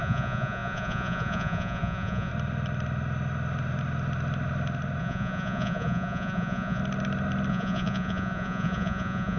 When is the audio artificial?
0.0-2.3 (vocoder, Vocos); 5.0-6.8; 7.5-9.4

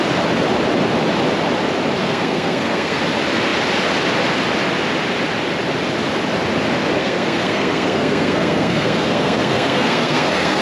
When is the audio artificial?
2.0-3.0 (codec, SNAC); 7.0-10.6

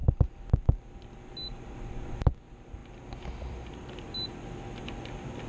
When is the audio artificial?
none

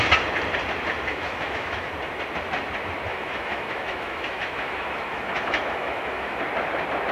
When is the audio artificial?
1.1-1.9 (autoencoder, DAC-VAE); 3.1-6.4